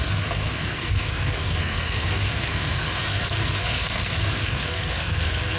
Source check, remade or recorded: remade